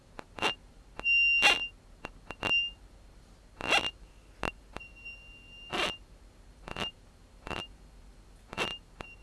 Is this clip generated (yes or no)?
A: no